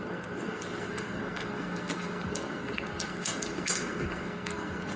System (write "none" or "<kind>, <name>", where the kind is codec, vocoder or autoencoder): codec, SNAC